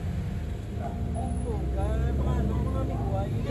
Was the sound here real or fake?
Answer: real